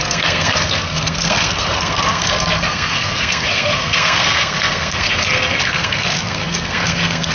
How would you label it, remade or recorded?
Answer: remade